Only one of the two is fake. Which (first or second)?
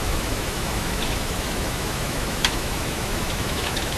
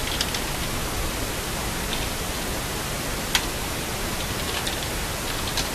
first